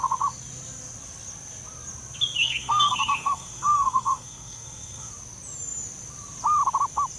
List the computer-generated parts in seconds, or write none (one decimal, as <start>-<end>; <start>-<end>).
2.4-5.1